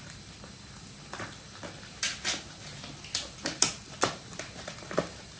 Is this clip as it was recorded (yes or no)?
yes